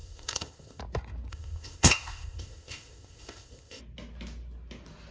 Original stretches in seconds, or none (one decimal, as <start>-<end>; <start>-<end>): 0.8-1.3; 3.8-5.1